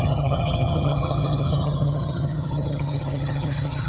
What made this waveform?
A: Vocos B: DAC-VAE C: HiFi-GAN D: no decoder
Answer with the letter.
C